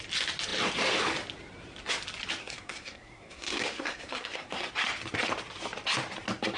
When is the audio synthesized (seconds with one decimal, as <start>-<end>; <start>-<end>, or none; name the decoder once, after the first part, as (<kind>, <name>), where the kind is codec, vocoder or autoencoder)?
2.4-4.7 (codec, SNAC)